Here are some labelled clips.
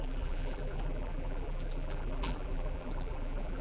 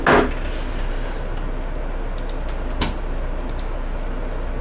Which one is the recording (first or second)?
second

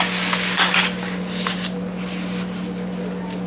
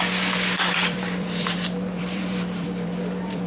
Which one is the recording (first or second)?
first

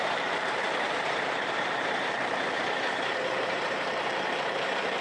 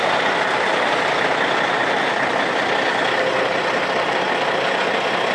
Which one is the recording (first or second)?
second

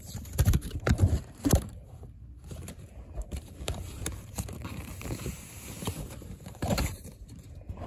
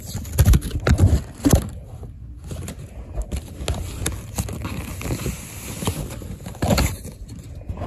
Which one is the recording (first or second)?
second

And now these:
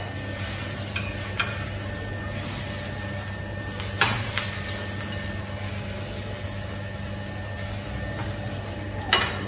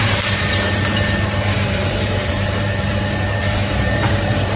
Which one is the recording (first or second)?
first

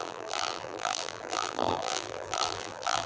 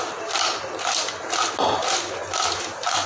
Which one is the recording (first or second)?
second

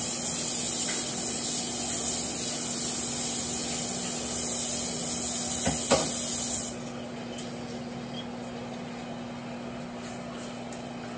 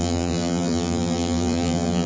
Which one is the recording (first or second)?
first